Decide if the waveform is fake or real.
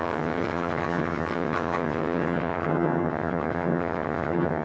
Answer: fake